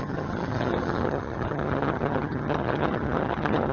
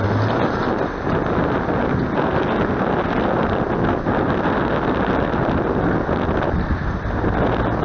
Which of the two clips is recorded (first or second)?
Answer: second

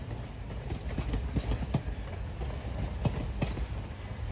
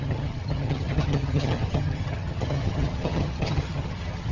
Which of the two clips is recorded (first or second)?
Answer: first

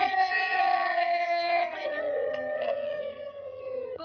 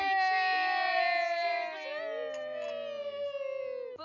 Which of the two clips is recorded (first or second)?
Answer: second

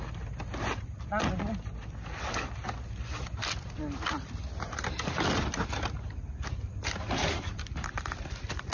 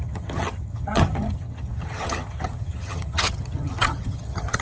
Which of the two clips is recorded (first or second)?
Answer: first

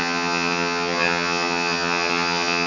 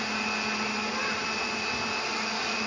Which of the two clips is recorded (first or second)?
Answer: second